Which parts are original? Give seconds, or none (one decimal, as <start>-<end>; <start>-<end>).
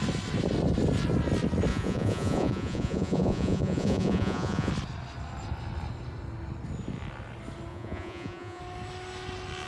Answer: 0.0-1.7; 4.7-7.7; 8.6-9.7